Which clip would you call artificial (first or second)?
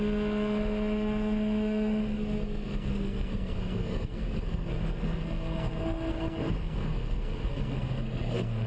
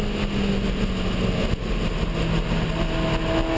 first